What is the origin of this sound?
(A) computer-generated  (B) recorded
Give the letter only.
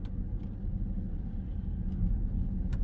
B